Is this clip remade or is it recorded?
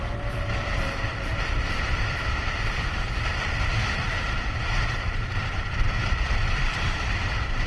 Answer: remade